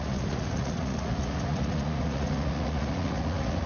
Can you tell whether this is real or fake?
fake